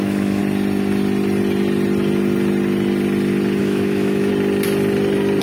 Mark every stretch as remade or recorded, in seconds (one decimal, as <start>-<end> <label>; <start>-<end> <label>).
0.0-0.4 remade; 0.4-3.6 recorded; 3.6-4.3 remade; 4.3-5.4 recorded

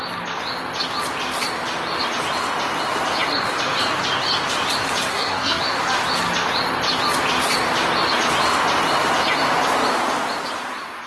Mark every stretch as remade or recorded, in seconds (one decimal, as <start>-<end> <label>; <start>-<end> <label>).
0.0-5.1 recorded; 5.1-5.6 remade; 5.6-11.1 recorded

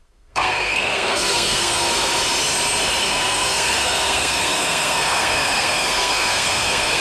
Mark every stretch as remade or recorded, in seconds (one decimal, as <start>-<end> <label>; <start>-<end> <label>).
0.0-2.1 remade; 2.1-3.0 recorded; 3.0-7.0 remade

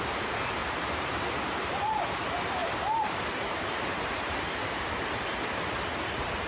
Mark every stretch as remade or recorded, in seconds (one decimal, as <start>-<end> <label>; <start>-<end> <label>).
0.0-0.6 recorded; 0.6-2.0 remade; 2.0-2.6 recorded; 2.6-5.1 remade; 5.1-6.5 recorded

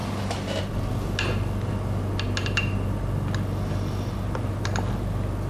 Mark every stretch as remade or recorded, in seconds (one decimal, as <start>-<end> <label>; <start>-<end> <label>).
0.0-5.5 recorded

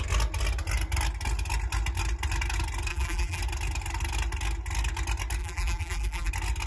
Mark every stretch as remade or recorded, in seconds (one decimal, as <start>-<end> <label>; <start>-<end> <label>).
0.0-2.9 recorded; 2.9-3.4 remade; 3.4-5.4 recorded; 5.4-6.3 remade; 6.3-6.7 recorded

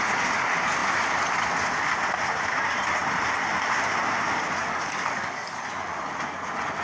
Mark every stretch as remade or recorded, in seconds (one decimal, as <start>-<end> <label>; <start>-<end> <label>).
0.0-4.6 recorded; 4.6-5.6 remade; 5.6-6.8 recorded

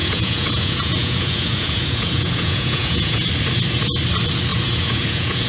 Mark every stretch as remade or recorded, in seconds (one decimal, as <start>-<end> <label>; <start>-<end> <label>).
0.0-3.3 remade; 3.3-4.5 recorded; 4.5-5.5 remade